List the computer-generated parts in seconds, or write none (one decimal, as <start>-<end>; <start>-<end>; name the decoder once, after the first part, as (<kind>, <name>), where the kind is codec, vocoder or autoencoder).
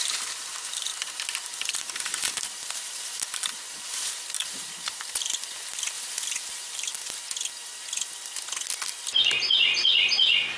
0.0-6.9 (vocoder, BigVGAN v2)